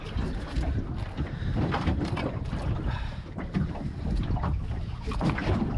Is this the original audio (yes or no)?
no